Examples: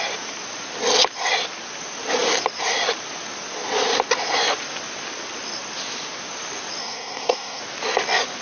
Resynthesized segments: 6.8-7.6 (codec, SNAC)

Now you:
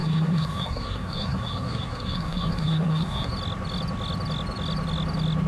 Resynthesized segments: 0.0-3.3 (codec, SNAC)